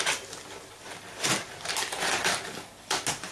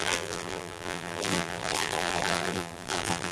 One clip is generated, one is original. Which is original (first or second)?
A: first